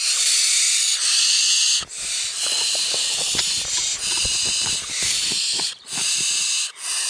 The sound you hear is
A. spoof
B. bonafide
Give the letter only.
B